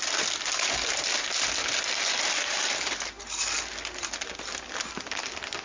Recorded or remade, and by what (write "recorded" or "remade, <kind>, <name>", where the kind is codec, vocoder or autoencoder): recorded